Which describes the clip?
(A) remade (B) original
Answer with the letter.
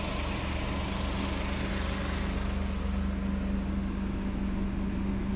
B